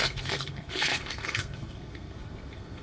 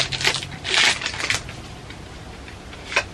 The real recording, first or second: second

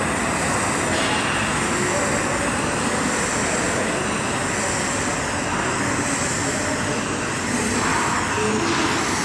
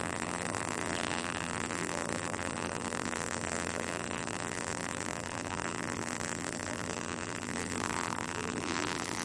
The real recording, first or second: first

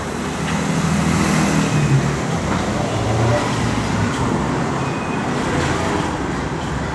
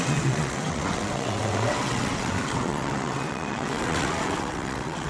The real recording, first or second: first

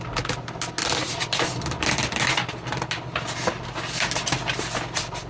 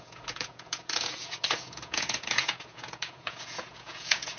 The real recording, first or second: first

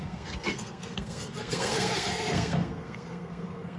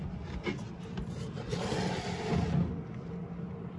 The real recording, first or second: second